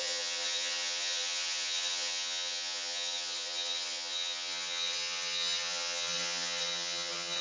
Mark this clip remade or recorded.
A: remade